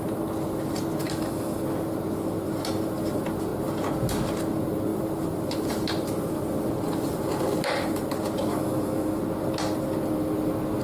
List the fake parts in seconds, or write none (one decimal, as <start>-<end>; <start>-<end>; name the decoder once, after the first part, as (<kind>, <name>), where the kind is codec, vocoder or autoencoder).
1.0-1.6 (autoencoder, DAC-VAE); 8.5-9.2

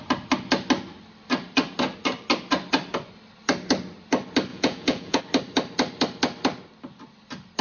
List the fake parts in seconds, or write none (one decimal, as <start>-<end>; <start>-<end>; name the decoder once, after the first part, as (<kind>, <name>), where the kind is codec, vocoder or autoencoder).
4.5-5.2 (vocoder, Vocos)

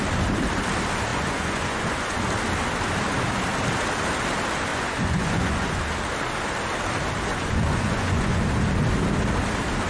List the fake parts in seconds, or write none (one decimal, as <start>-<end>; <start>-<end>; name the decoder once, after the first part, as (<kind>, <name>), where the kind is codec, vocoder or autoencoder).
1.1-2.2 (vocoder, Vocos); 4.7-5.8; 7.3-8.4

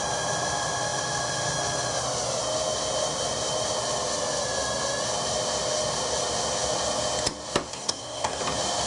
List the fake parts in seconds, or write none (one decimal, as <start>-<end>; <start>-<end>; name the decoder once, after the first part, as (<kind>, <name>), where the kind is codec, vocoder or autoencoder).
7.7-8.4 (codec, SNAC)

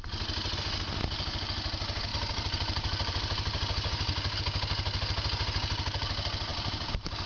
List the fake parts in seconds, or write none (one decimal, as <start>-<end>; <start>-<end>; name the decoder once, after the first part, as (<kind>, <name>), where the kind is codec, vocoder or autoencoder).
2.1-4.4 (vocoder, BigVGAN v2); 6.5-7.3

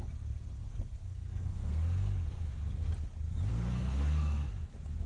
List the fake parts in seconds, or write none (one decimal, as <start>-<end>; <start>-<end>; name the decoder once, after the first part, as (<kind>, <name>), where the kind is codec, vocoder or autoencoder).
0.6-2.9 (codec, SNAC); 3.5-4.5